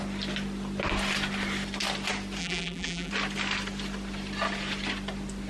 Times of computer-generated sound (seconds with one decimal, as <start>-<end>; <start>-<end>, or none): 2.4-3.1